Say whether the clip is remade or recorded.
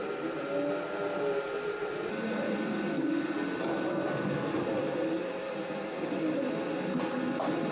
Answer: recorded